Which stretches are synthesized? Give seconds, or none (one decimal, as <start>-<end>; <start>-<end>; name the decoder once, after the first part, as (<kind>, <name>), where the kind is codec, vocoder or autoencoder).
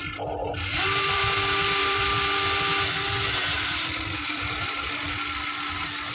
0.0-1.2 (vocoder, BigVGAN v2); 1.8-2.6; 3.4-4.8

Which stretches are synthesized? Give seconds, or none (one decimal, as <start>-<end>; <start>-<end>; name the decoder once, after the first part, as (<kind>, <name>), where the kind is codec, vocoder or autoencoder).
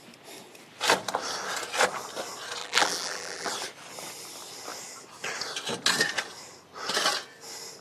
2.6-3.5 (vocoder, BigVGAN v2)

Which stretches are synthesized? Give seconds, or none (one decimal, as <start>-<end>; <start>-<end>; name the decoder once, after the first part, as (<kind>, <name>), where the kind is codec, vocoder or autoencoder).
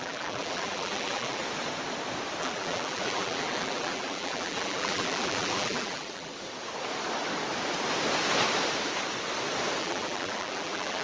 0.0-1.4 (vocoder, BigVGAN v2); 2.4-6.3; 9.8-11.0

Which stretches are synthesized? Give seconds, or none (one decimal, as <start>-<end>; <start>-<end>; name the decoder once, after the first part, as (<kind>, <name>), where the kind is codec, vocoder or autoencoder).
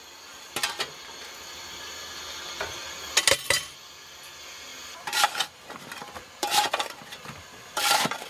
3.3-8.3 (vocoder, BigVGAN v2)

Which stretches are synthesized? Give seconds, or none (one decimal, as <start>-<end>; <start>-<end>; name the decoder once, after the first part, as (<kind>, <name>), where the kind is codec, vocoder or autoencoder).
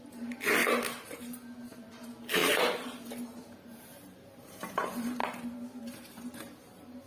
0.0-0.6 (vocoder, BigVGAN v2); 1.1-2.4; 3.2-5.2; 5.8-7.1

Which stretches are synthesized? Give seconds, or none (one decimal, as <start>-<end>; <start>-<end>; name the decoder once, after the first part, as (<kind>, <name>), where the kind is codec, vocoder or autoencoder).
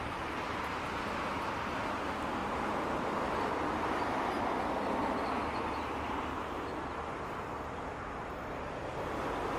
2.4-3.3 (vocoder, BigVGAN v2)